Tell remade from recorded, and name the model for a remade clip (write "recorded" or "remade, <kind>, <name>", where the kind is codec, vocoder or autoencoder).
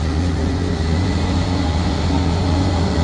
remade, vocoder, Vocos